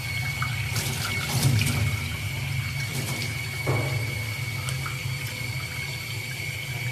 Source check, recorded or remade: recorded